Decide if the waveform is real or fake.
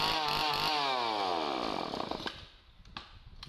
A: real